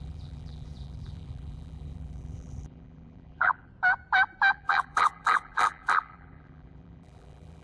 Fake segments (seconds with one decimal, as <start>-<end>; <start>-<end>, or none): 0.0-3.7; 4.5-7.6

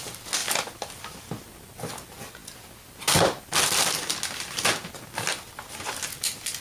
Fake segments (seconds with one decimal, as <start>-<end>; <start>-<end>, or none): 0.4-0.9

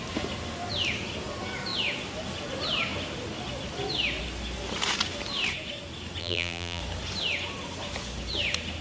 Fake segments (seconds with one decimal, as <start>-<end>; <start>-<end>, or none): 6.2-6.8

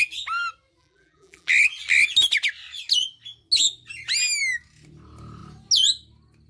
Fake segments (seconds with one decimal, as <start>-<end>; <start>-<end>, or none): 0.8-1.5

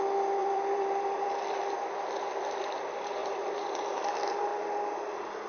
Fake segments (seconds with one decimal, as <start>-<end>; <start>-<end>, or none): 0.4-1.3; 3.2-4.0

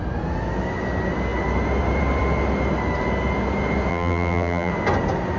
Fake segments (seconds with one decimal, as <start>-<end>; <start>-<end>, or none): 3.9-4.7

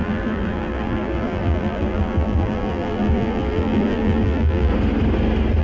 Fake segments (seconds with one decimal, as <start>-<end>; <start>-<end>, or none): 0.0-4.7

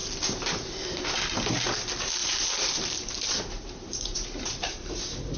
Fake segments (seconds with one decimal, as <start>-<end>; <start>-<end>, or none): 0.0-0.7; 2.2-4.9